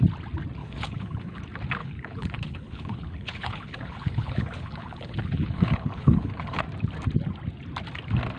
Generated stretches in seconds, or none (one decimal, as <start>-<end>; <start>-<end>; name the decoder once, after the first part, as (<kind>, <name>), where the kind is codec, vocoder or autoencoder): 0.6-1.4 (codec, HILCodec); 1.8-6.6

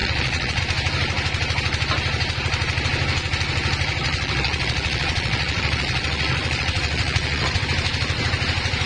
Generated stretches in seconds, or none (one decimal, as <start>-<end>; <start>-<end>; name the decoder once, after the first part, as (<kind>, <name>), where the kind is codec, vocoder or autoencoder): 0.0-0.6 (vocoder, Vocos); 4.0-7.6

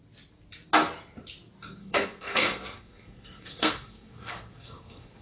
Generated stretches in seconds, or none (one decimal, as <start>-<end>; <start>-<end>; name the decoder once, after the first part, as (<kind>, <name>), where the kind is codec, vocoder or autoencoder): 1.8-5.2 (codec, SNAC)

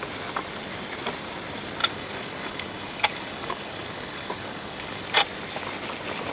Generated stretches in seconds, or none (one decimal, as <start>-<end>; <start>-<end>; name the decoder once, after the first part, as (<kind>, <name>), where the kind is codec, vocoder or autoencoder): 1.8-5.0 (codec, DAC)

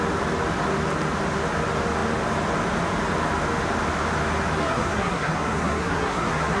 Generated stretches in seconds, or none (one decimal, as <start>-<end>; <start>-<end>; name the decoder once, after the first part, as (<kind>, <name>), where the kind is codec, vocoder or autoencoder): 4.6-6.6 (codec, SNAC)